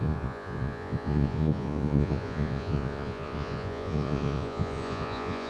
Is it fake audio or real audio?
fake